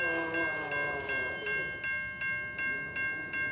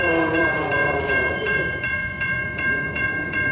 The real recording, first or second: first